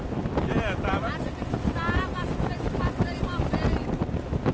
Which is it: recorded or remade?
recorded